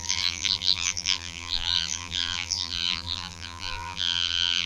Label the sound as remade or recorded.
remade